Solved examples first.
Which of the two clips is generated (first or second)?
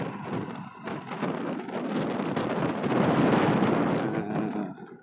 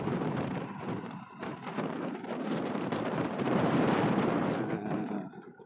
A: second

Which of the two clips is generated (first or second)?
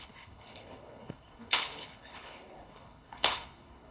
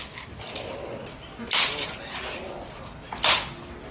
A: first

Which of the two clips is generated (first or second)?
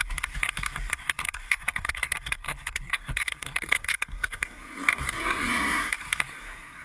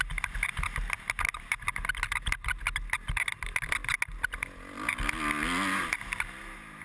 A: first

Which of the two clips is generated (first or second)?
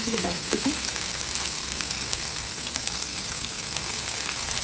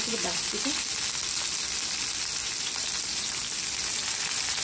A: first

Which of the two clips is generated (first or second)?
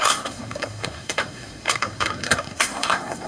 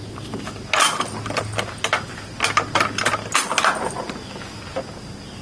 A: first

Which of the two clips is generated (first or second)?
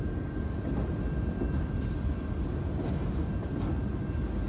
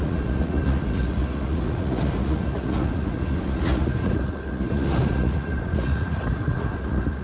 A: second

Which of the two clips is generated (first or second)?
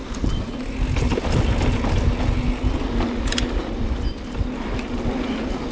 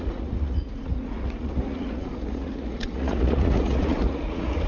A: second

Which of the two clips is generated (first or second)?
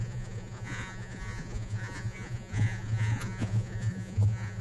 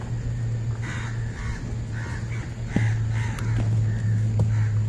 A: first